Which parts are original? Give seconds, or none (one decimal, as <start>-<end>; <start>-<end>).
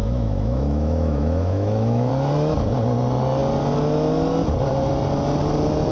2.1-5.9